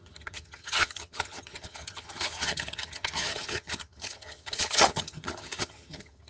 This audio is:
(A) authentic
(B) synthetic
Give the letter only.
B